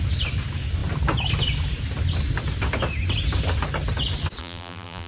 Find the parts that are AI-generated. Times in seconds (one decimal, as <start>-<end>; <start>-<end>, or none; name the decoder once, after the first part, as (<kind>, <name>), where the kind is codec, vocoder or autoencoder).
4.4-5.1 (vocoder, BigVGAN v2)